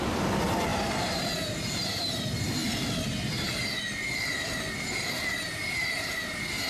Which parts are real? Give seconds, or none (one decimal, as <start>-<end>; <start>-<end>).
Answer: 0.0-0.7; 2.1-6.7